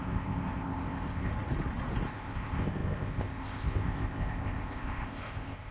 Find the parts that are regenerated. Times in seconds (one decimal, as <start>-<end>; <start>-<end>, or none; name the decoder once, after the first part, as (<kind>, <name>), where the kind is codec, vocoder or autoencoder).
0.0-1.3 (codec, ZipCodec); 2.1-5.7

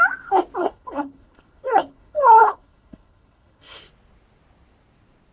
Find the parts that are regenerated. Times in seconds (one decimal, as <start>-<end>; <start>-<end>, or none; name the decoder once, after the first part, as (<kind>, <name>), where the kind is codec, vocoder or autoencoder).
0.6-3.8 (codec, HILCodec)

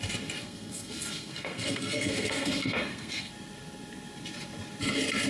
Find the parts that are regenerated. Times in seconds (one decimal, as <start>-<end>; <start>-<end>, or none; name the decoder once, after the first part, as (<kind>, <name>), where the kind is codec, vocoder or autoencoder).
0.4-3.3 (codec, SNAC)

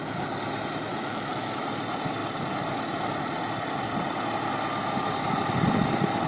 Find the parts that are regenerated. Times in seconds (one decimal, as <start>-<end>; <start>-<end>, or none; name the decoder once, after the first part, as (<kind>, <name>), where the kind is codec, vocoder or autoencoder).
0.9-1.6 (autoencoder, DAC-VAE)

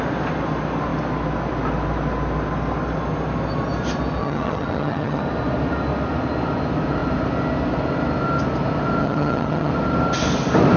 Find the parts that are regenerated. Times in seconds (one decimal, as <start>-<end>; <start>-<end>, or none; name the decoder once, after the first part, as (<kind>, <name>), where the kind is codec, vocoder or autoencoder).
4.2-5.2 (vocoder, HiFi-GAN); 9.0-9.7

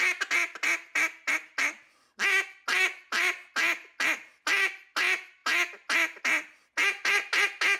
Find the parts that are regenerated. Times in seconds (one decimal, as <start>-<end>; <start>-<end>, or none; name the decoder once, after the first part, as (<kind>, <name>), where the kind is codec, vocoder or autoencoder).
none

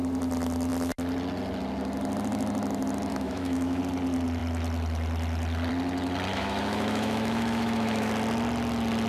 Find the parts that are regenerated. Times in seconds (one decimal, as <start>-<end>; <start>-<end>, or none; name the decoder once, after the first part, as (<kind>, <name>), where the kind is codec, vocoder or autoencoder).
3.1-3.8 (autoencoder, DAC-VAE); 6.3-8.1

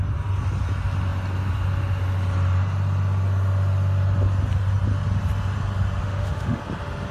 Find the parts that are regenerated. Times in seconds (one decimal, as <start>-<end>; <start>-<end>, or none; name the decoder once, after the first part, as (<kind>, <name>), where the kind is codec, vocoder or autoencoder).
6.0-6.6 (autoencoder, DAC-VAE)